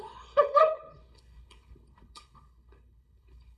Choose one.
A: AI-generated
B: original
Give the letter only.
A